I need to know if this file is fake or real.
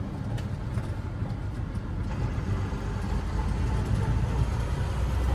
real